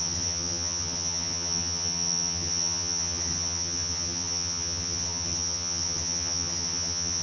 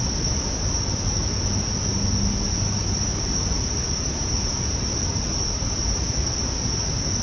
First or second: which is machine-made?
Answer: first